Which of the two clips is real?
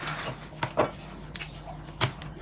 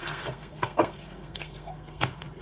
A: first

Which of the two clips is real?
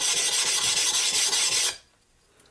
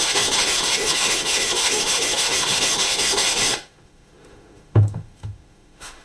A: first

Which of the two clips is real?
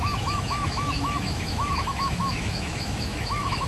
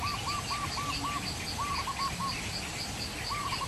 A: second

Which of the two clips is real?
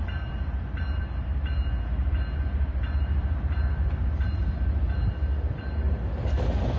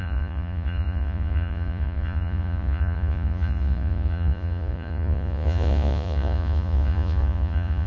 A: first